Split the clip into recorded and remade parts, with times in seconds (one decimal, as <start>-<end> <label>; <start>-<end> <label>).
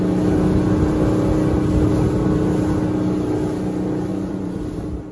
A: 0.0-4.1 recorded; 4.1-4.6 remade; 4.6-5.1 recorded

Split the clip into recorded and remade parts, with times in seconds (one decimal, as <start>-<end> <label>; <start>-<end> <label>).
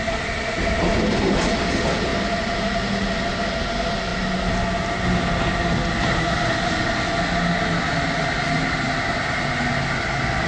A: 0.0-10.5 recorded